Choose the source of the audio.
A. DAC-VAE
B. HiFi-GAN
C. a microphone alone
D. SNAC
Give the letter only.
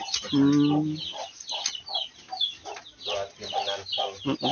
C